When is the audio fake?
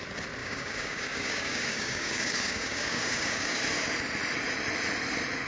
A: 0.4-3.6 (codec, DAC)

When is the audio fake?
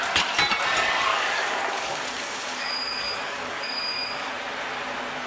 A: 1.1-4.3 (codec, DAC)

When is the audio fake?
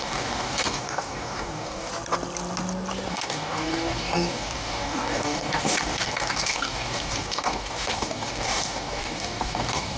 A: 0.0-1.9 (codec, DAC); 3.1-10.0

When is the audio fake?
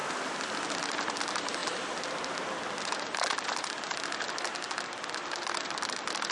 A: none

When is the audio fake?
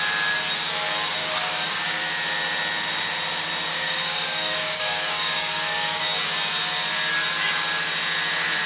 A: 1.2-2.0 (codec, DAC); 3.7-6.0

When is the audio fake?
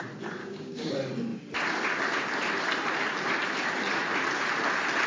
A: 0.4-0.9 (codec, DAC)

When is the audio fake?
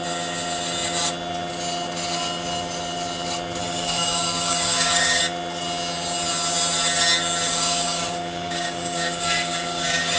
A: 3.6-5.2 (codec, DAC); 7.5-10.2